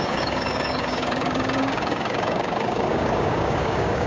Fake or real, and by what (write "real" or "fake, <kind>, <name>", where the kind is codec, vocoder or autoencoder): fake, codec, DAC